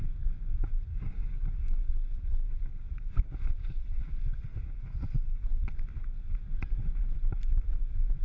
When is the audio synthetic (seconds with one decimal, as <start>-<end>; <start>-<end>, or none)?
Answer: 0.9-1.9